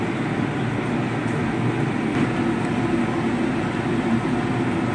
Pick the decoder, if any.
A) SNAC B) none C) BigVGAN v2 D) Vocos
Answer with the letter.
B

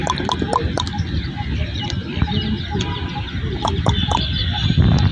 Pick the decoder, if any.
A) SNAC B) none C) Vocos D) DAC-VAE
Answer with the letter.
B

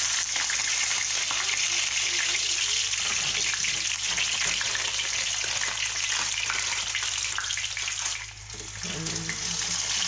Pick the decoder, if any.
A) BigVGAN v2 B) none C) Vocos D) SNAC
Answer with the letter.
B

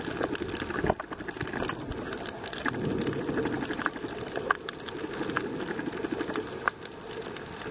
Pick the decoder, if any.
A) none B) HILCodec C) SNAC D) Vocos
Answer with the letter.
A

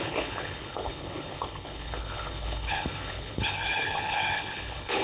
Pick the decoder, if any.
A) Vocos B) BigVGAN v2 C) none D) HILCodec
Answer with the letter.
D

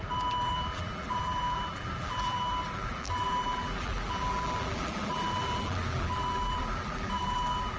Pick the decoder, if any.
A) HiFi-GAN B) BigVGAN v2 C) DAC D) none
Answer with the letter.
B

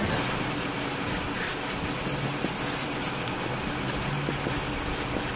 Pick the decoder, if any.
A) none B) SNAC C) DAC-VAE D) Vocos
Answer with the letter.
A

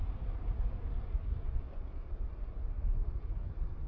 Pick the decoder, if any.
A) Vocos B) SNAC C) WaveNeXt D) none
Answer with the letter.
D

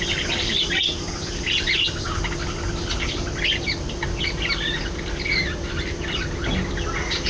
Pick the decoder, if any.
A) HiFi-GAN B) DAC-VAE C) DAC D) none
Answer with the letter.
D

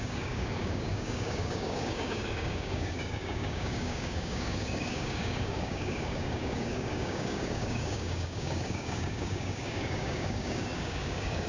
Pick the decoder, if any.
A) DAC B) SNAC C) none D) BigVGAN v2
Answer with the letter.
A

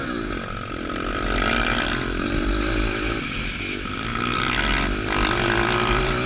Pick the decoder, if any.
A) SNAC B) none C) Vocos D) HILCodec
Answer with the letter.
B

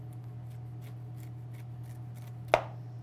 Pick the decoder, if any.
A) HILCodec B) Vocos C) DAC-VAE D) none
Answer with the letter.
D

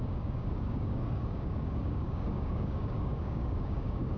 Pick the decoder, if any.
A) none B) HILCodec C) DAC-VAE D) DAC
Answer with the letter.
D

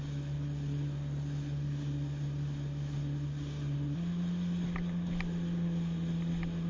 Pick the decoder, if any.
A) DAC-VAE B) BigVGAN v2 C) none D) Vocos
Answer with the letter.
C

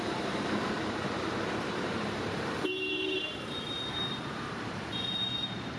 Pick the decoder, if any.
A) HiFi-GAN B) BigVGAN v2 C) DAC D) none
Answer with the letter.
B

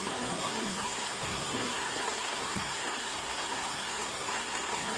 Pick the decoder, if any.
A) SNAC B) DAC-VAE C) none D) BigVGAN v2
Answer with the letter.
A